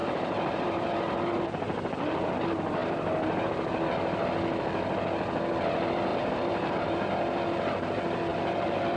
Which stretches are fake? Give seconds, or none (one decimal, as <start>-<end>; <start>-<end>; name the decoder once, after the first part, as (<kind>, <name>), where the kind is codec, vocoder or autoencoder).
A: 0.0-2.4 (vocoder, BigVGAN v2); 6.1-7.1; 8.3-9.0